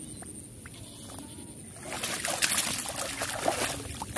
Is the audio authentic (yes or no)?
yes